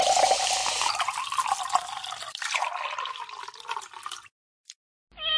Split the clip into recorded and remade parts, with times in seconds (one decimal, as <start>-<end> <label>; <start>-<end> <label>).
0.0-5.4 recorded